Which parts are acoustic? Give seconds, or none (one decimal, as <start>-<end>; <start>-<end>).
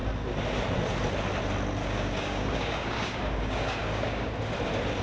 0.0-1.8; 4.3-5.0